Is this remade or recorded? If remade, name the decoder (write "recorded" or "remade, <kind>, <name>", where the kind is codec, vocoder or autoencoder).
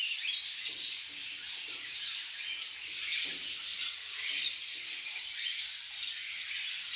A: recorded